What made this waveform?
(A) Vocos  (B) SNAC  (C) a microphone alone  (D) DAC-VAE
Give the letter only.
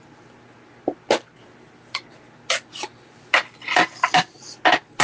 C